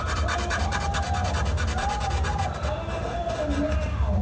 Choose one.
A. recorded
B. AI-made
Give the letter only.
A